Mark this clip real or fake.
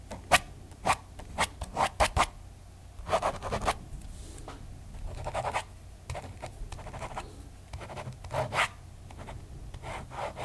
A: real